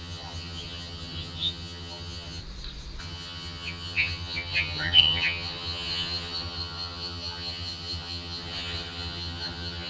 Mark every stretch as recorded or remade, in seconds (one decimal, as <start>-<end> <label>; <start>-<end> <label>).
0.0-2.4 remade; 2.4-3.0 recorded; 3.0-9.9 remade